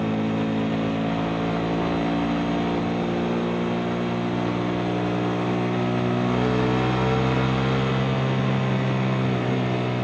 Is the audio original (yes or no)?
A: yes